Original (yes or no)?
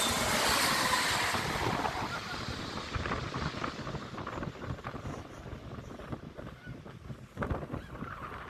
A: yes